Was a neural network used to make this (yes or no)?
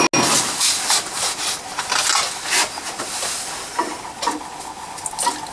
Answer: no